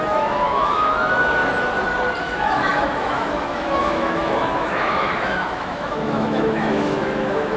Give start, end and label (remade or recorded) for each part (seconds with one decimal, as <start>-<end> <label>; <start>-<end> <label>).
0.0-1.4 remade; 1.4-2.2 recorded; 2.2-7.6 remade